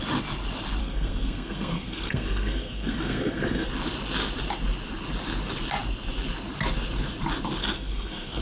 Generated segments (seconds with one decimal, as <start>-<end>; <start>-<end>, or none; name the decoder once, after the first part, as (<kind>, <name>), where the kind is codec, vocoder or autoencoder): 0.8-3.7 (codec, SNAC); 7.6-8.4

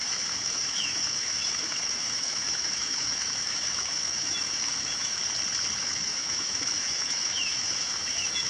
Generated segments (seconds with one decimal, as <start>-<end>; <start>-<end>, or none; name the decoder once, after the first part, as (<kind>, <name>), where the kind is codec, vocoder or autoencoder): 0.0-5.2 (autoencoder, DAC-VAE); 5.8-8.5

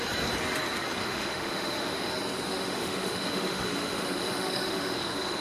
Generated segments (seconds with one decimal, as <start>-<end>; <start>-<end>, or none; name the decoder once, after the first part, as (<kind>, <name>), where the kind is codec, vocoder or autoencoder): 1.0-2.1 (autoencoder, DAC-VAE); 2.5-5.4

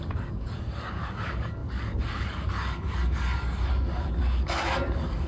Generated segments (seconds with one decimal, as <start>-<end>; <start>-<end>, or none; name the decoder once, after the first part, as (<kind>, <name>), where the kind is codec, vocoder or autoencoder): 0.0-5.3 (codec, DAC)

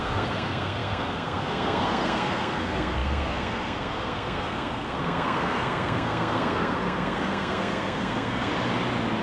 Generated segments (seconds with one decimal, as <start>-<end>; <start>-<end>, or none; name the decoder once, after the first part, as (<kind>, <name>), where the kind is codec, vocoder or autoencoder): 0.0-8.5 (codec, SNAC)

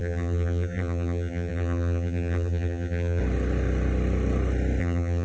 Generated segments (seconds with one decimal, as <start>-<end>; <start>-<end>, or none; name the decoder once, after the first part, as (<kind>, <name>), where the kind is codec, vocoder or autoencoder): 0.0-3.2 (vocoder, BigVGAN v2); 4.8-5.2